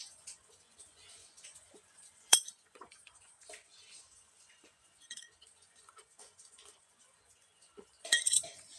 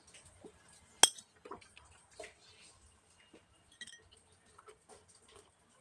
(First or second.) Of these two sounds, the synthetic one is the first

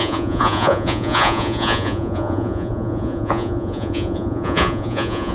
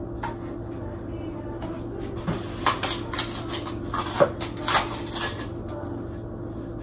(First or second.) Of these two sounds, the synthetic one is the first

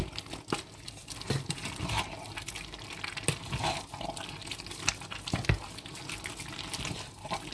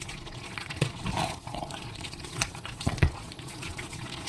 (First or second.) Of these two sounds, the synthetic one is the second